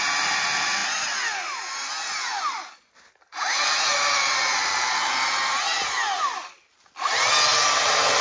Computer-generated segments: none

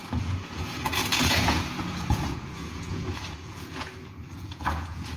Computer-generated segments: 0.0-5.2 (vocoder, Vocos)

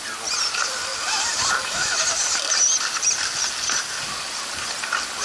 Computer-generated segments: none

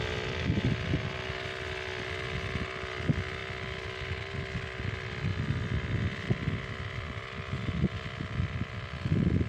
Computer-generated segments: none

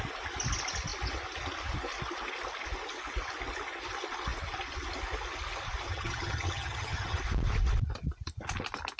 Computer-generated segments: 5.9-7.2 (vocoder, HiFi-GAN)